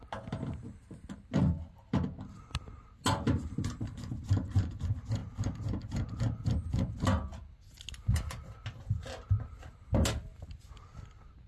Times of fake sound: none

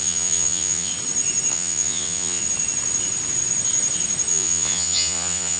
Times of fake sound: 0.0-0.9 (vocoder, Vocos); 1.5-2.4; 4.3-5.6

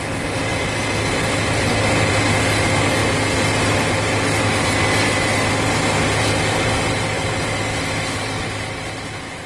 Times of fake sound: none

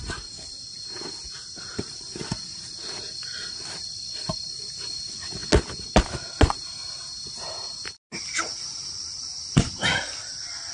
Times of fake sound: none

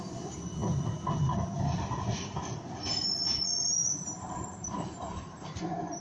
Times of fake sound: 3.8-6.0 (vocoder, BigVGAN v2)